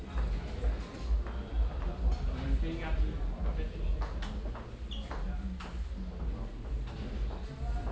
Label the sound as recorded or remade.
recorded